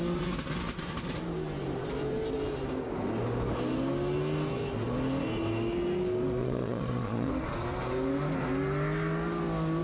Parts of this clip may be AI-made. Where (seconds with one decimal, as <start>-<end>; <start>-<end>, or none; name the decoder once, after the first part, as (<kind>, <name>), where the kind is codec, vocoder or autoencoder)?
6.4-7.3 (vocoder, Vocos)

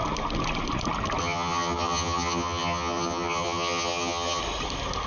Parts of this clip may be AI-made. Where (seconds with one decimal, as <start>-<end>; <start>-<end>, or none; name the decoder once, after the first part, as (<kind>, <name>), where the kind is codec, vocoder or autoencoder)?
1.2-4.4 (vocoder, HiFi-GAN)

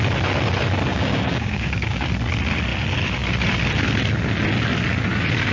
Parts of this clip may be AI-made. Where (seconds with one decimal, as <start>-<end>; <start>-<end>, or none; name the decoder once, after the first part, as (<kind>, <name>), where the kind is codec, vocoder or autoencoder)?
0.9-2.1 (codec, DAC)

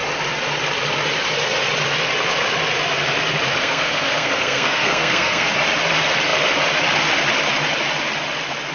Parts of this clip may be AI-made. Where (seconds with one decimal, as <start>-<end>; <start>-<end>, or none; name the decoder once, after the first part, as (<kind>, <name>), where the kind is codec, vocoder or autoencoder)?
3.6-5.5 (codec, SNAC)

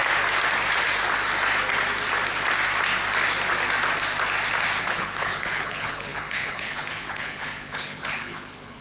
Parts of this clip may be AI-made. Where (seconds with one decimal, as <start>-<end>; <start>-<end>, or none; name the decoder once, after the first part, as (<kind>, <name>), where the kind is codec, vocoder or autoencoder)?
4.8-8.8 (codec, HILCodec)